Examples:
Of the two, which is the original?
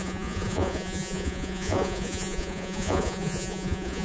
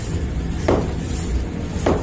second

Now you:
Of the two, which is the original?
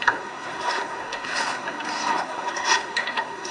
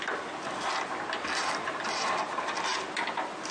second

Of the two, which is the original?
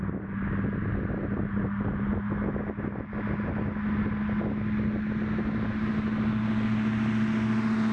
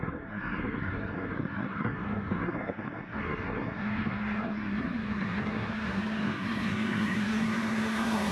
first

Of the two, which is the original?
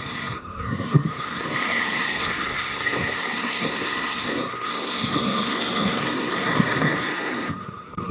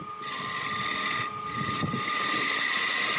second